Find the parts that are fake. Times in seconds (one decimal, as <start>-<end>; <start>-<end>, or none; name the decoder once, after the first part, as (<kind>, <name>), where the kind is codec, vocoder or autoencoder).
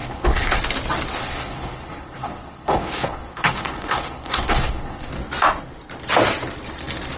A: 0.0-0.6 (codec, HILCodec); 1.1-5.1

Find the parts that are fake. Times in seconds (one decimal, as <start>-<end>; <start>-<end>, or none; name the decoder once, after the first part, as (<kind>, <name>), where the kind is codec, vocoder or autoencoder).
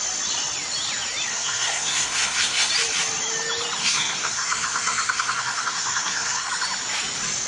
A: 1.3-2.7 (codec, SNAC); 3.8-6.5